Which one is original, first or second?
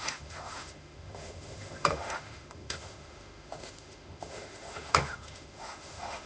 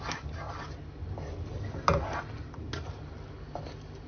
second